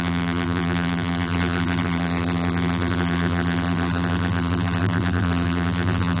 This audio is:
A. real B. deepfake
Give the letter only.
B